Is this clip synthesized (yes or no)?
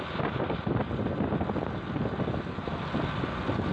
no